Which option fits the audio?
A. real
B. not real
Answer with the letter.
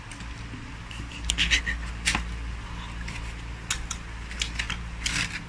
A